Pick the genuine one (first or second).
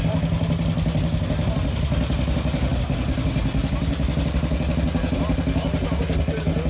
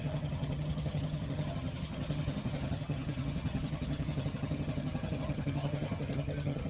first